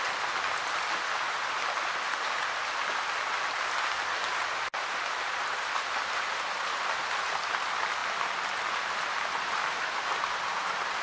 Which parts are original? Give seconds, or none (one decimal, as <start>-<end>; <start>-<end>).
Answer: 0.0-11.0